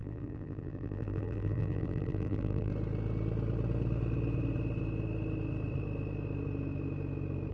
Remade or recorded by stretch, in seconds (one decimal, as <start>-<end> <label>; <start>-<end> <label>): 0.0-2.7 remade; 2.7-7.5 recorded